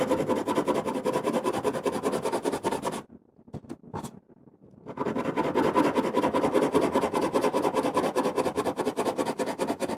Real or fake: real